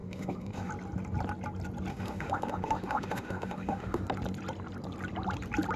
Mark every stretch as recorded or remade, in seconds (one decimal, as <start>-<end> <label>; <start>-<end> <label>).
0.0-0.7 remade; 0.7-1.9 recorded; 1.9-4.0 remade; 4.0-5.8 recorded